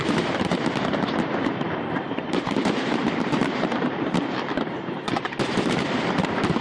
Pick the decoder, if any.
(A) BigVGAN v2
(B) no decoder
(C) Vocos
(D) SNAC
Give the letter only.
A